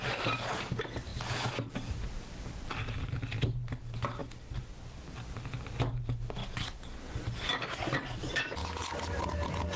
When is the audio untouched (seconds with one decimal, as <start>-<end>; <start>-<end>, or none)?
0.0-1.1; 3.1-9.8